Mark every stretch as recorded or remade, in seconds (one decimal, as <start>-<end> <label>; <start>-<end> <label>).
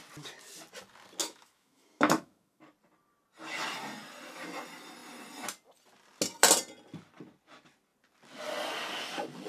0.0-1.2 recorded; 1.2-2.6 remade; 2.6-9.5 recorded